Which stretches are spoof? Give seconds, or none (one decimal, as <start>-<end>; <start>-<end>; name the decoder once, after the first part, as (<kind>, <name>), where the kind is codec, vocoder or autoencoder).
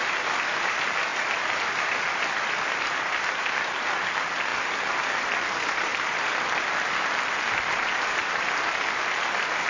0.0-9.7 (vocoder, BigVGAN v2)